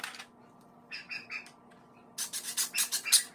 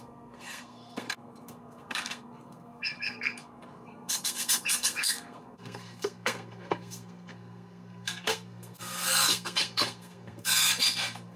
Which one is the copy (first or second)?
second